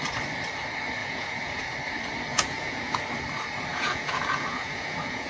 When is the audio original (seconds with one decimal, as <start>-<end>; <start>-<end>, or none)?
0.0-1.0; 1.6-2.3; 3.0-3.7